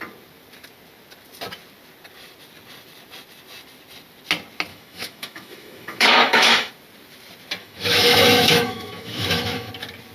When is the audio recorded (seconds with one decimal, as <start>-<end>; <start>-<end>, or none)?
0.0-4.7; 6.7-7.6; 9.7-10.1